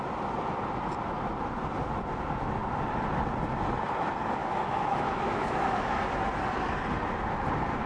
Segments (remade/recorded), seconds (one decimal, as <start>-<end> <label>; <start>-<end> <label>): 0.0-4.4 recorded; 4.4-6.0 remade; 6.0-7.9 recorded

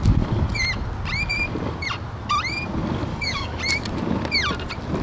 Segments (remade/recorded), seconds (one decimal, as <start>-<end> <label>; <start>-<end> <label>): 0.0-3.1 recorded; 3.1-3.6 remade; 3.6-5.0 recorded

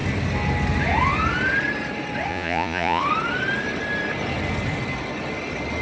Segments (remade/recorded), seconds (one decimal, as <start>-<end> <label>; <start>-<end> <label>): 0.0-2.3 recorded; 2.3-3.0 remade; 3.0-5.8 recorded

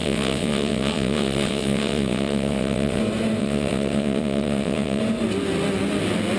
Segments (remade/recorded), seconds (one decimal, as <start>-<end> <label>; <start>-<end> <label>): 0.0-3.0 remade; 3.0-3.4 recorded; 3.4-5.0 remade; 5.0-6.4 recorded

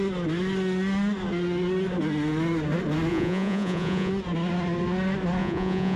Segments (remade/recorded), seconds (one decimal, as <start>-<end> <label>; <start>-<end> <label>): 0.0-3.1 recorded; 3.1-4.1 remade; 4.1-5.4 recorded; 5.4-6.0 remade